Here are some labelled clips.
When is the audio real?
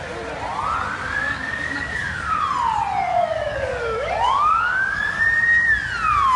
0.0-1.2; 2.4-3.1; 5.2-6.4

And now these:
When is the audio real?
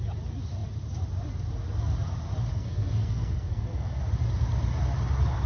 0.0-2.5; 4.0-5.5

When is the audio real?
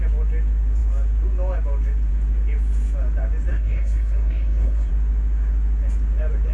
0.0-3.5; 4.9-6.5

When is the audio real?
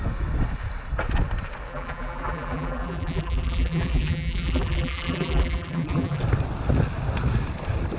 0.0-1.7; 6.2-8.0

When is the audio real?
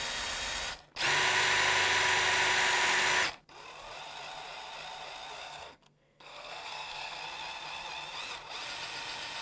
0.0-5.4; 7.2-9.4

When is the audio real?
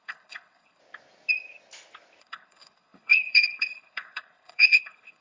0.8-2.2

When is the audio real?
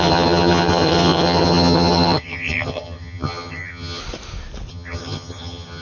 4.0-4.7